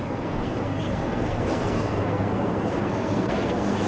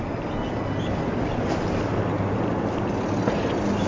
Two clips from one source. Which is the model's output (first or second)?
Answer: first